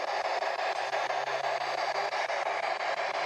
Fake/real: real